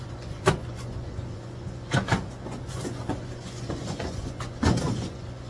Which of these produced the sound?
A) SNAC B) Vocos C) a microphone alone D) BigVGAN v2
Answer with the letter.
B